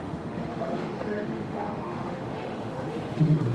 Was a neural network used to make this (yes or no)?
yes